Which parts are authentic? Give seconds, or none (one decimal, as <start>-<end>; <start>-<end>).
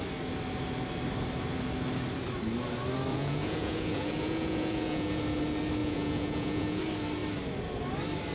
0.0-3.1; 5.2-5.8; 6.8-8.3